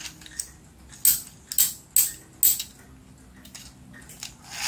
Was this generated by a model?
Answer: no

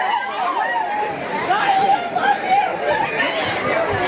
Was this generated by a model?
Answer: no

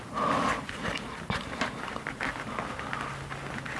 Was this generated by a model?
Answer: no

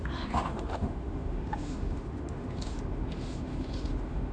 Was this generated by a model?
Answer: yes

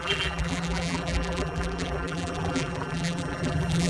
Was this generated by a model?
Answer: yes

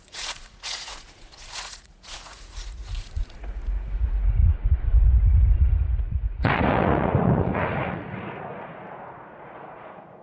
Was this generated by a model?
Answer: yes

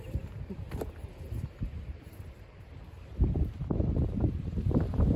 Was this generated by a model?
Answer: yes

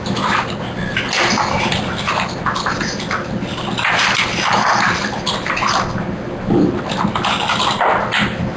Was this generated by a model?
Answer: no